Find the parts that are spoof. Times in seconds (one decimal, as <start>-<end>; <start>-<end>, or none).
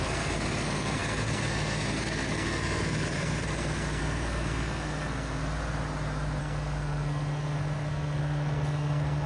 0.0-5.4; 6.4-9.3